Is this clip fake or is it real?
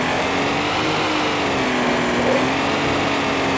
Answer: real